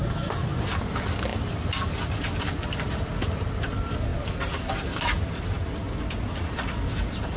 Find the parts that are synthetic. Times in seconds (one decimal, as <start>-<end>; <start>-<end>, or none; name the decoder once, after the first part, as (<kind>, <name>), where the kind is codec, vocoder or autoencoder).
none